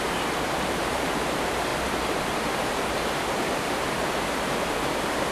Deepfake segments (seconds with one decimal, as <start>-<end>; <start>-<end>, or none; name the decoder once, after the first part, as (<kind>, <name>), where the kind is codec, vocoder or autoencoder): 0.0-5.3 (vocoder, BigVGAN v2)